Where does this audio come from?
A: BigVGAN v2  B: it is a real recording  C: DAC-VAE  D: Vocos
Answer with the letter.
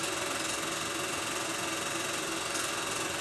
B